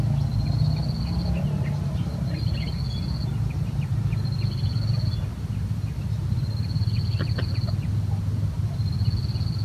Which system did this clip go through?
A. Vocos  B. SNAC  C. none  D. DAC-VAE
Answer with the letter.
C